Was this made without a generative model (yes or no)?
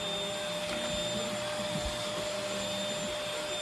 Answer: yes